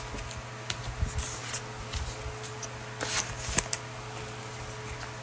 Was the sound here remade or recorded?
recorded